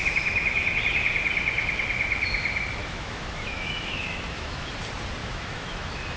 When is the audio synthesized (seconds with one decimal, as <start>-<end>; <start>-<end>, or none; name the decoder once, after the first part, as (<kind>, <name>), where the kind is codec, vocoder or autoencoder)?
0.0-0.8 (autoencoder, DAC-VAE); 2.8-4.7; 5.2-6.2